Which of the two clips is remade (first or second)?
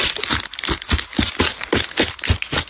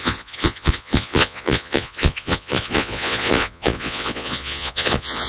second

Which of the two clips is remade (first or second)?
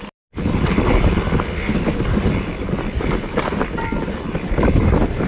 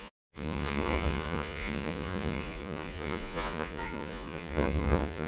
second